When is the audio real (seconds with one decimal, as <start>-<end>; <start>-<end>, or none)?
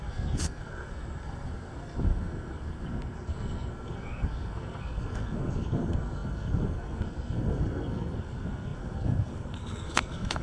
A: none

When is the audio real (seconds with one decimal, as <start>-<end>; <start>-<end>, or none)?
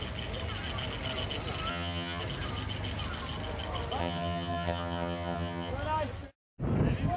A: 0.0-1.7; 2.2-4.0; 5.7-7.2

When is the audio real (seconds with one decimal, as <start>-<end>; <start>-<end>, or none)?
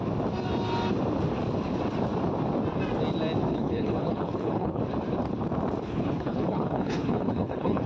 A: 0.0-3.5; 4.8-5.8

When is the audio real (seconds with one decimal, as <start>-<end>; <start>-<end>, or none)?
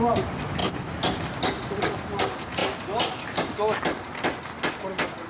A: 0.0-5.3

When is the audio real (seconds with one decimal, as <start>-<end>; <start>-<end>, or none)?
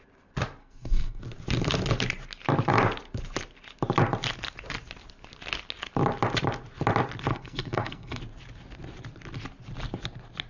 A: 0.0-0.6; 1.2-7.3; 8.2-10.5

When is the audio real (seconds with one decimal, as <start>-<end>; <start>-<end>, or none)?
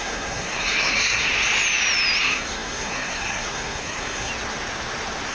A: 1.3-2.2; 4.3-5.3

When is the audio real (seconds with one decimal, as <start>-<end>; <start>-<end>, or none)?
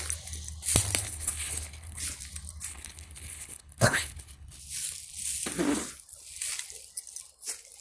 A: 0.0-1.0; 2.0-2.7; 4.6-7.8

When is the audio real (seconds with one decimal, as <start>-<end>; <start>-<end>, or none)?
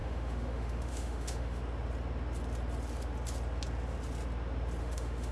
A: 1.6-4.8